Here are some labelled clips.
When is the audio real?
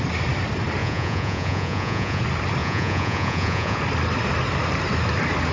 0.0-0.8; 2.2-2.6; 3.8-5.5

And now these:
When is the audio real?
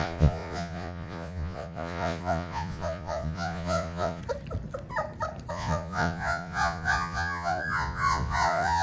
4.2-5.5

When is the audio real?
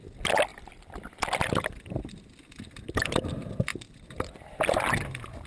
0.0-5.5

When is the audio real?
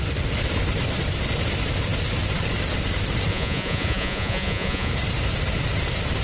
0.0-3.3; 4.9-6.2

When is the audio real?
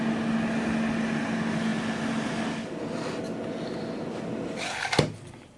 0.0-5.6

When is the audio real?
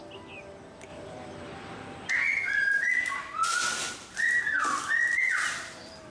0.0-6.1